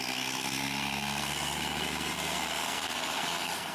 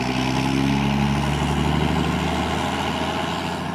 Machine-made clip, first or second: first